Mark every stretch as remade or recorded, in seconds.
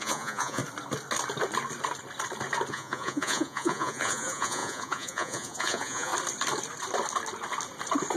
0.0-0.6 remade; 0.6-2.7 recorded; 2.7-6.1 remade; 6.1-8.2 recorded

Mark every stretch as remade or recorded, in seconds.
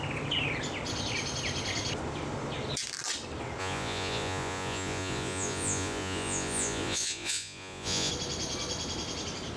0.0-3.6 recorded; 3.6-8.1 remade; 8.1-9.6 recorded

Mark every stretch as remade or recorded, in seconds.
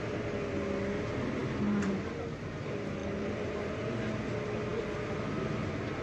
0.0-3.0 recorded; 3.0-4.0 remade; 4.0-6.0 recorded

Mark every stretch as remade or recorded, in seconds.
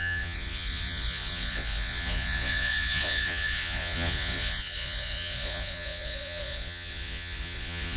0.0-8.0 remade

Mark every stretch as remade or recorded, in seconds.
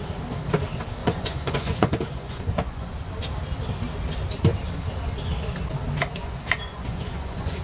0.0-1.0 recorded; 1.0-2.9 remade; 2.9-6.2 recorded; 6.2-7.6 remade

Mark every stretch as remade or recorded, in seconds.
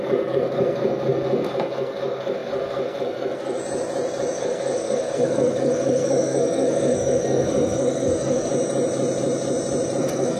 0.0-3.6 remade; 3.6-4.4 recorded; 4.4-8.5 remade; 8.5-10.0 recorded; 10.0-10.4 remade